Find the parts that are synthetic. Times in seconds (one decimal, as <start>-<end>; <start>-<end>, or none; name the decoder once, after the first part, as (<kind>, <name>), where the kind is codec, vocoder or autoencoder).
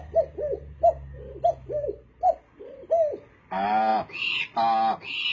none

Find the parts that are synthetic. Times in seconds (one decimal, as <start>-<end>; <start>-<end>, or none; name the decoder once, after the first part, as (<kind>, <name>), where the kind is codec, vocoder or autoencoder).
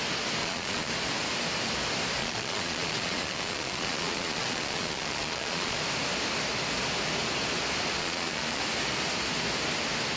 0.4-0.9 (vocoder, Vocos); 2.2-5.8; 8.0-8.6